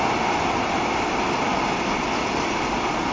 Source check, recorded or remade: recorded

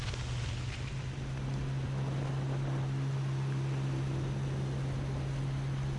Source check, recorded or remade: recorded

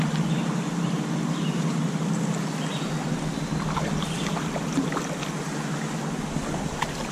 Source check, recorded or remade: recorded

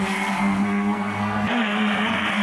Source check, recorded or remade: remade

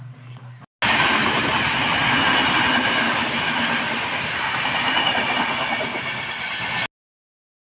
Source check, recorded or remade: recorded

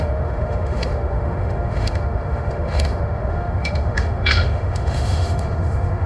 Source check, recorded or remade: remade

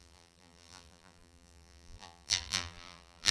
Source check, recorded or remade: remade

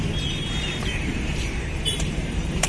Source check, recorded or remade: remade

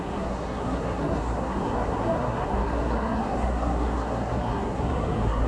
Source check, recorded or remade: remade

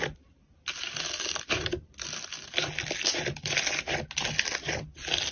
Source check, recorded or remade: recorded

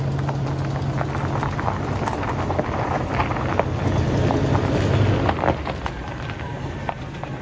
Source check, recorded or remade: recorded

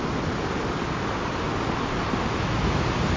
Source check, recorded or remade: recorded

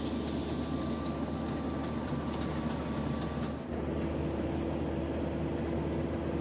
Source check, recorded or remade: recorded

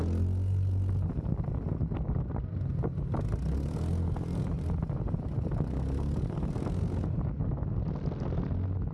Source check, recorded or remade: recorded